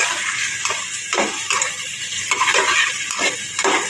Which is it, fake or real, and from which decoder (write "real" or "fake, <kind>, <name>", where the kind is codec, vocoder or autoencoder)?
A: fake, vocoder, BigVGAN v2